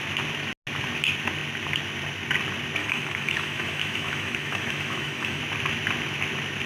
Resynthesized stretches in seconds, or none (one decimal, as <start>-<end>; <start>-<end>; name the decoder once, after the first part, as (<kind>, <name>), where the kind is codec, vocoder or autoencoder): 2.8-5.4 (autoencoder, DAC-VAE)